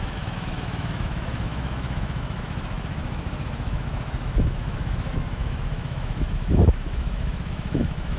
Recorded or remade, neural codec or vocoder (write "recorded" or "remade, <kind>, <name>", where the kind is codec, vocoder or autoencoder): remade, autoencoder, DAC-VAE